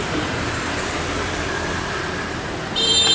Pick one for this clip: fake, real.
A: fake